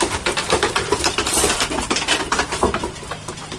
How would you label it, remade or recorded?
recorded